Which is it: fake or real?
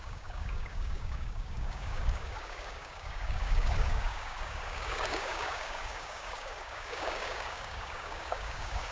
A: fake